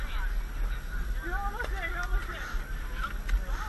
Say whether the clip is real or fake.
real